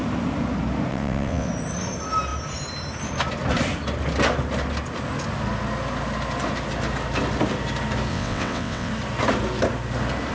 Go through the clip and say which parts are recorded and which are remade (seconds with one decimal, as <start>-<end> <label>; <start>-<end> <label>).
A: 0.0-0.9 recorded; 0.9-1.5 remade; 1.5-8.1 recorded; 8.1-8.9 remade; 8.9-10.3 recorded